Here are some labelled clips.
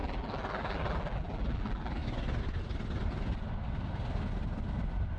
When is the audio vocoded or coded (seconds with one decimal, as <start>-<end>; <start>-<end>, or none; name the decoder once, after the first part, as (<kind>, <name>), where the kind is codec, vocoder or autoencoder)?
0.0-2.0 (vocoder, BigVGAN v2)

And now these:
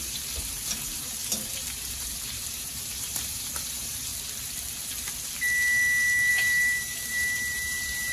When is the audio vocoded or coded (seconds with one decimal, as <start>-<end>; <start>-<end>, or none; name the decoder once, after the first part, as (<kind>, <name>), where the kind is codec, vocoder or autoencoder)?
0.0-4.1 (vocoder, BigVGAN v2); 6.3-8.1

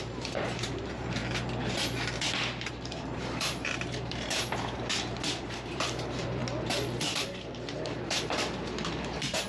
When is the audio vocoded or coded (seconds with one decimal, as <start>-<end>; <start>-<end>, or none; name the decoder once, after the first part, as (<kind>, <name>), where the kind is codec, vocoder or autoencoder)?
0.0-1.2 (vocoder, BigVGAN v2); 2.7-6.4; 7.1-9.5